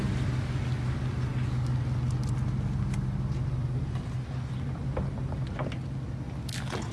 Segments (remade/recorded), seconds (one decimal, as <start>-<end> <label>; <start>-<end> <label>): 0.0-6.9 recorded